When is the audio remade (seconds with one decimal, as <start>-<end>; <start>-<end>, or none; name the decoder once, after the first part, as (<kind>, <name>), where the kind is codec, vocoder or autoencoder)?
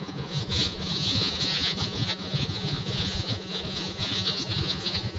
0.0-5.2 (vocoder, Vocos)